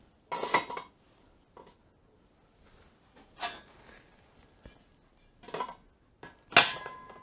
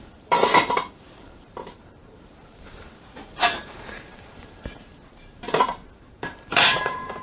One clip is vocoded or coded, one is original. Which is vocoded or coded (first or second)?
second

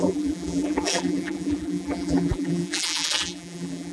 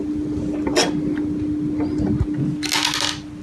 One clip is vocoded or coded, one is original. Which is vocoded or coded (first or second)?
first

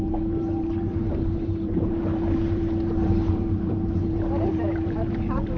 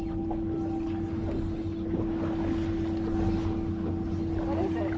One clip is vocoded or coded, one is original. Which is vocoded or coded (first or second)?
first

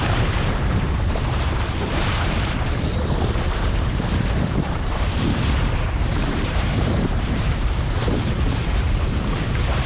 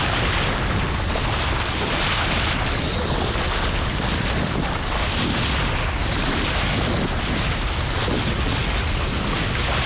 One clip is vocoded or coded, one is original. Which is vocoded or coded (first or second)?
first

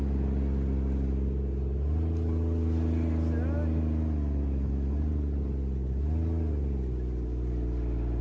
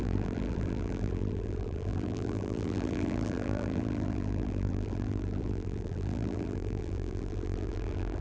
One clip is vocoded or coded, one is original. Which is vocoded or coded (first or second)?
second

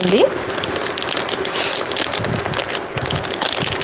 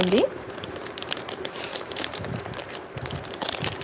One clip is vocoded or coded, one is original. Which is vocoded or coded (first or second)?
second